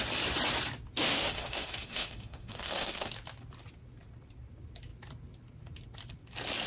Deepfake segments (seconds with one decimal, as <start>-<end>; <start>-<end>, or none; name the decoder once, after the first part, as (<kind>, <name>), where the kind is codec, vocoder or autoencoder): 1.0-3.1 (autoencoder, DAC-VAE)